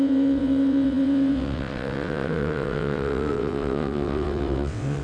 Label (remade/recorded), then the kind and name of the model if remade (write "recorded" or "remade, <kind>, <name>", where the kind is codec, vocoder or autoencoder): remade, vocoder, WaveNeXt